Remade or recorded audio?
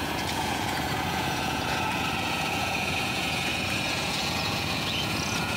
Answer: remade